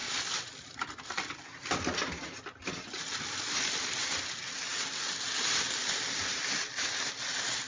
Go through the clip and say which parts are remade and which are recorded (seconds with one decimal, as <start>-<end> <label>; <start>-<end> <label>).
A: 0.0-7.7 recorded